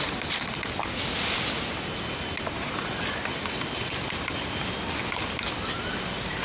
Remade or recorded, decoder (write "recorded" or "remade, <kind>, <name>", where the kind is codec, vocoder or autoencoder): recorded